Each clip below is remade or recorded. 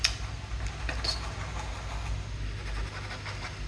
recorded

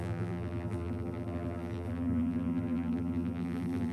remade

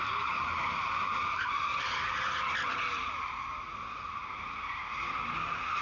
recorded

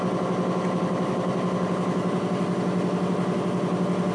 recorded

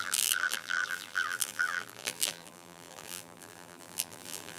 remade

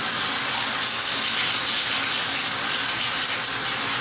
recorded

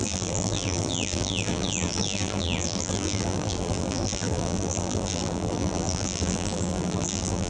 remade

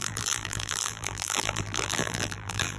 remade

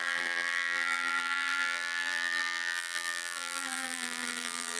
remade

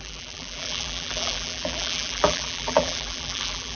remade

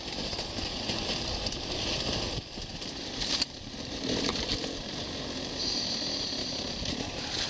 remade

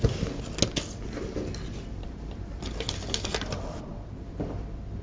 recorded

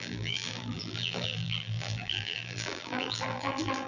remade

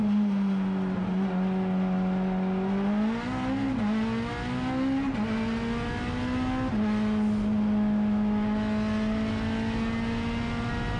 recorded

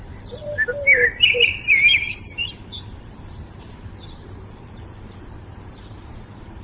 remade